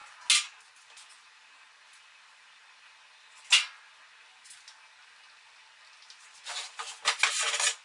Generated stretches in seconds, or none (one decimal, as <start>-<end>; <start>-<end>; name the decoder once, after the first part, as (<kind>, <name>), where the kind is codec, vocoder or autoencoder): none